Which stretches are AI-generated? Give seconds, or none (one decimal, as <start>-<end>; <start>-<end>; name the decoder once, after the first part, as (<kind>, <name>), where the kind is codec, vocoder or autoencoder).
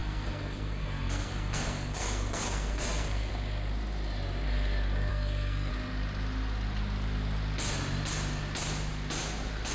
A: 0.0-3.3 (codec, SNAC); 5.1-5.7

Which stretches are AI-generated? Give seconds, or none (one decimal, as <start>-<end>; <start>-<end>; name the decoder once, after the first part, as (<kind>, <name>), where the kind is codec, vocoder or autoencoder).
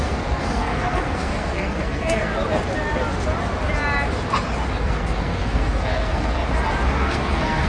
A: 0.0-2.3 (codec, SNAC); 4.8-6.4; 7.0-7.7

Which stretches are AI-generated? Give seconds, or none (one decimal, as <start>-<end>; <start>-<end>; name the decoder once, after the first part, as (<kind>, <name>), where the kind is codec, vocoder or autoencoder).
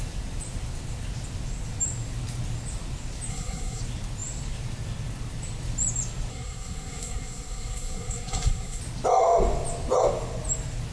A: 3.3-3.8 (codec, SNAC); 6.3-8.8